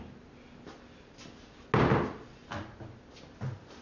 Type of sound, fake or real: real